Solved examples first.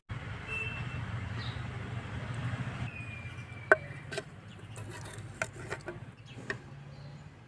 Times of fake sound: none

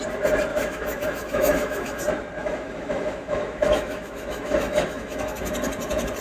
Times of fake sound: 0.5-2.0 (autoencoder, DAC-VAE); 2.4-5.5

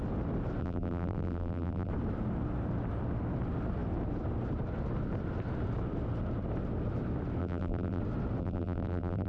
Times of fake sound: 0.6-1.9 (vocoder, BigVGAN v2); 7.4-8.0; 8.4-9.3

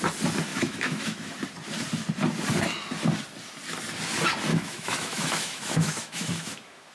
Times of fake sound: 0.5-1.3 (autoencoder, DAC-VAE); 4.5-6.9